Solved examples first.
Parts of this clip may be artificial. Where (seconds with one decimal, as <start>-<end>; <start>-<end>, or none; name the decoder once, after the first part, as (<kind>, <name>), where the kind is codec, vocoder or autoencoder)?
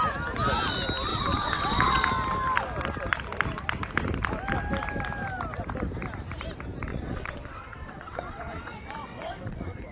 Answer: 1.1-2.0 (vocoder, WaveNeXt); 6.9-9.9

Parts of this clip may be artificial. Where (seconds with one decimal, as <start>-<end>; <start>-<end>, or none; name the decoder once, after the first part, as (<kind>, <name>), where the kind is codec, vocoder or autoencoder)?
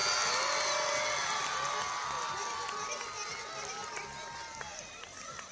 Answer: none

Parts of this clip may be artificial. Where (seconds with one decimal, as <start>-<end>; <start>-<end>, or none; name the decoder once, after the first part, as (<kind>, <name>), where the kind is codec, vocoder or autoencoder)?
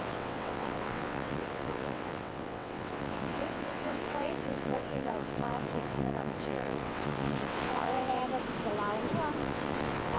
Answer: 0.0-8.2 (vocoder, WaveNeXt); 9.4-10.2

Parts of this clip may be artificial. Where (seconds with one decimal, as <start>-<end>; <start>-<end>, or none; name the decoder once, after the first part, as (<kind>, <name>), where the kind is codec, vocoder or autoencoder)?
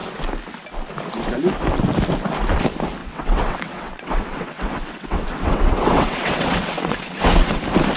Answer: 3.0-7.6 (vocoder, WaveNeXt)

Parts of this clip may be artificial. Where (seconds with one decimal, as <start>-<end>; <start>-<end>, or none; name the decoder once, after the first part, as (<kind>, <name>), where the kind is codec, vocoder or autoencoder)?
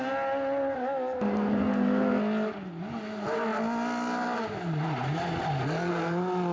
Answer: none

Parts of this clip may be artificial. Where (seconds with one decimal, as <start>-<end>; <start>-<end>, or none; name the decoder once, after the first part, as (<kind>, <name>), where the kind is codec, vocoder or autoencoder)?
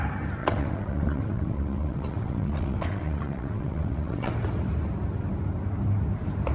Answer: 0.4-4.3 (vocoder, WaveNeXt)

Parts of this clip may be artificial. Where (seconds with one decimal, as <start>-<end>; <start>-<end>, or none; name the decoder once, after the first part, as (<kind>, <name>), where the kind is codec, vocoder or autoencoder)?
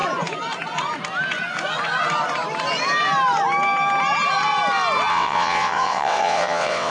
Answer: 5.1-6.9 (vocoder, WaveNeXt)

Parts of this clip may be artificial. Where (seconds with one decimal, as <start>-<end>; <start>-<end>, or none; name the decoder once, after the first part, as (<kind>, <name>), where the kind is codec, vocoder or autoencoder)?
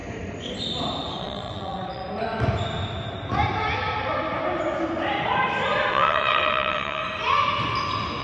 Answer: 1.2-2.0 (vocoder, WaveNeXt); 5.9-7.0